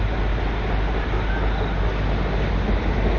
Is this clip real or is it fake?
real